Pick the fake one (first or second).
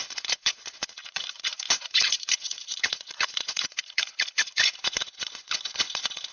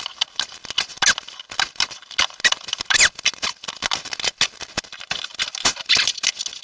first